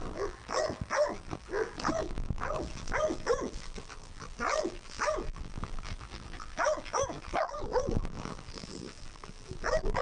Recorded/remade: remade